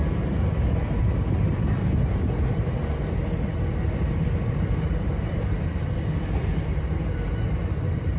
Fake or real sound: real